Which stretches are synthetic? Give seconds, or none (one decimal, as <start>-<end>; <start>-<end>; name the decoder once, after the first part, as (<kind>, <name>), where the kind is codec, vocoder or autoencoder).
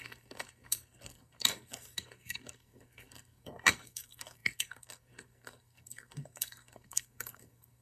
0.0-7.8 (codec, SNAC)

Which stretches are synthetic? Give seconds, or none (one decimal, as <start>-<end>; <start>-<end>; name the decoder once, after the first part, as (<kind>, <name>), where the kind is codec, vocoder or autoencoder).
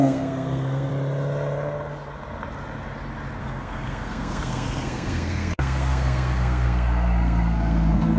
0.0-0.9 (codec, SNAC); 3.4-8.2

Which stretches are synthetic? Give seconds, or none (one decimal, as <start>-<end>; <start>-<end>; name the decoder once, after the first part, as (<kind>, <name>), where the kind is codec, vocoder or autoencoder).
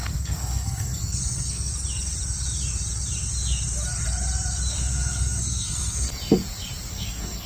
0.0-1.7 (codec, SNAC); 4.7-6.1; 6.9-7.5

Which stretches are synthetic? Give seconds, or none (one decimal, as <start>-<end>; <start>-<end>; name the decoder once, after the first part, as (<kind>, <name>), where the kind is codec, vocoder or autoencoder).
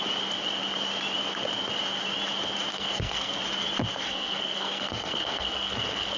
2.7-3.4 (codec, SNAC); 3.9-6.2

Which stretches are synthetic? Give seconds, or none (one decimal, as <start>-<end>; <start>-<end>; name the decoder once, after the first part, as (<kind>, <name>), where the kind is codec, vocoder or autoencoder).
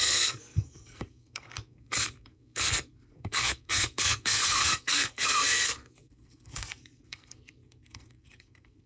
0.0-8.9 (codec, SNAC)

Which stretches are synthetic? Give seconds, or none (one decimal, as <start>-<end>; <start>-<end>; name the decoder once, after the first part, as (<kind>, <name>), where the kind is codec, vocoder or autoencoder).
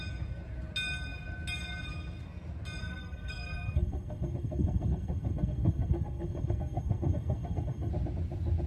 2.8-7.9 (codec, SNAC)